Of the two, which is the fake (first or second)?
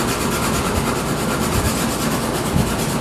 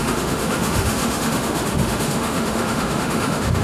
second